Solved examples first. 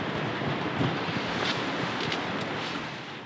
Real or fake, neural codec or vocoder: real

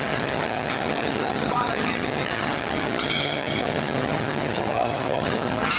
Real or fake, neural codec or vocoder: fake, vocoder, HiFi-GAN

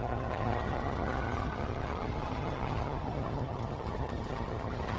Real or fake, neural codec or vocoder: fake, vocoder, HiFi-GAN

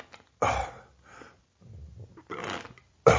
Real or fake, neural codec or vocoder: real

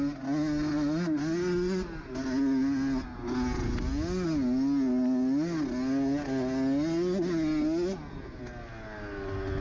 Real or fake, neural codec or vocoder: real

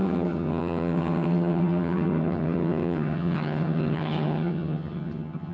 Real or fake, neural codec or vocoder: fake, vocoder, HiFi-GAN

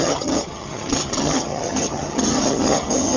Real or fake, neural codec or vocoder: fake, vocoder, HiFi-GAN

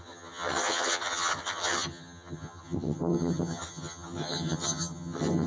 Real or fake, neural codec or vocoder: fake, vocoder, HiFi-GAN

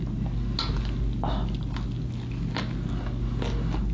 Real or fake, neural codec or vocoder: real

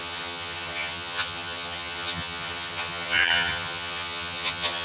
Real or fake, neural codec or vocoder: fake, vocoder, HiFi-GAN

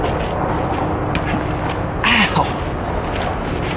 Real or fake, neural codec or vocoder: real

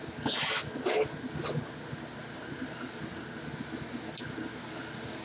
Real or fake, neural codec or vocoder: real